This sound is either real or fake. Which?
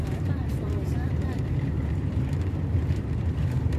fake